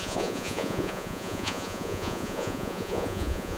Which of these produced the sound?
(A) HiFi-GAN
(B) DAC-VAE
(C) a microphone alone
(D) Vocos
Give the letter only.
D